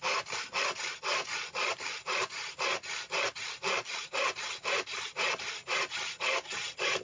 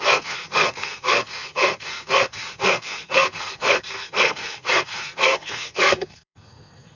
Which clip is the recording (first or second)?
first